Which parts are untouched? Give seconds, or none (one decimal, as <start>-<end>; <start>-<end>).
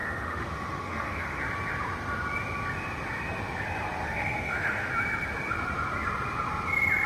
1.4-4.0; 4.9-7.1